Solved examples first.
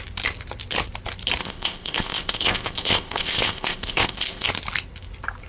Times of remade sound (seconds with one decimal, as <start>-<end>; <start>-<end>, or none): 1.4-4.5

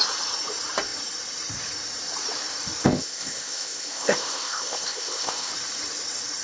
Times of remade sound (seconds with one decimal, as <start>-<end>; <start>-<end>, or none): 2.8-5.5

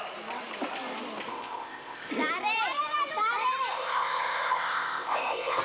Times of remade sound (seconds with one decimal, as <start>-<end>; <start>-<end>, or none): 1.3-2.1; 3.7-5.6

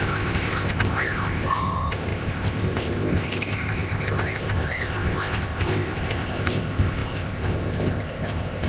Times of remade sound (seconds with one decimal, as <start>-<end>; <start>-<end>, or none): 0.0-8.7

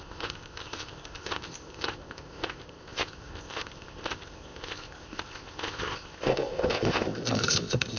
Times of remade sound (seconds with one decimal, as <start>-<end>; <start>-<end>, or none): 0.0-8.0

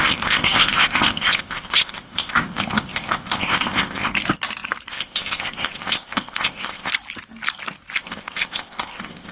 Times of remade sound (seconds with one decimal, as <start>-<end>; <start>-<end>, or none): 0.0-4.1; 4.9-6.9; 8.0-9.3